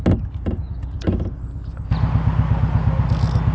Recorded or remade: recorded